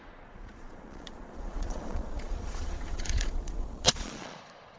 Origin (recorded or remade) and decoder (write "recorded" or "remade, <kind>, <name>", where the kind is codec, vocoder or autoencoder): remade, vocoder, Vocos